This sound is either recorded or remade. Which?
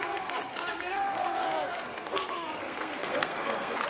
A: remade